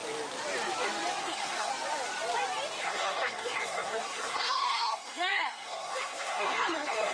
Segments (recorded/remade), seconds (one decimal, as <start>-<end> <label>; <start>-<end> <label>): 0.0-1.2 recorded; 1.2-1.7 remade; 1.7-2.8 recorded; 2.8-7.1 remade